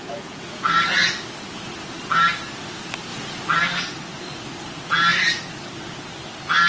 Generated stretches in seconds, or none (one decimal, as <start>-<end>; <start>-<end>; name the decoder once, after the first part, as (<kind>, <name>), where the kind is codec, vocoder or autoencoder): 0.0-1.0 (vocoder, Vocos)